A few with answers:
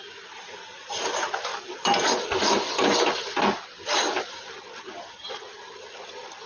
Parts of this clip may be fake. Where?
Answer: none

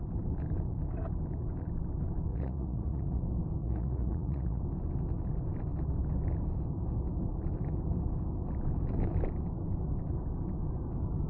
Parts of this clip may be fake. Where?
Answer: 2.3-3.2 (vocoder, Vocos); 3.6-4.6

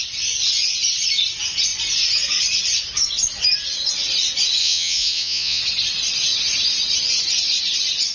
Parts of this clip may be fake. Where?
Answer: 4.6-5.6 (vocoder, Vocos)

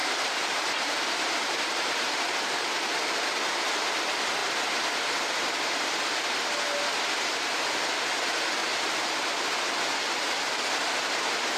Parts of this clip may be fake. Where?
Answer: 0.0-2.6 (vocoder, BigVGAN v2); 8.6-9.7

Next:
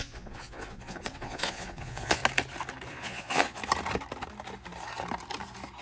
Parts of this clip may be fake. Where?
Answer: 0.0-2.2 (vocoder, Vocos); 2.9-3.6

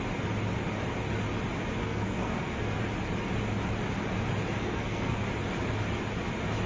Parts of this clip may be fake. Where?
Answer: 1.8-2.8 (codec, SNAC); 4.6-5.2